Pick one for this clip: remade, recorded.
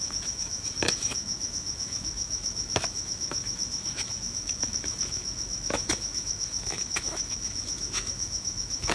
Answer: remade